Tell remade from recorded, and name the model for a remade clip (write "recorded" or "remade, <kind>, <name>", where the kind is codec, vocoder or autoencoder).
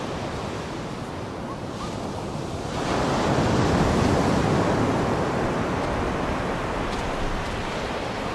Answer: recorded